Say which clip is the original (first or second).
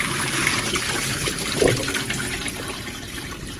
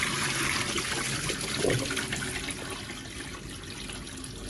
second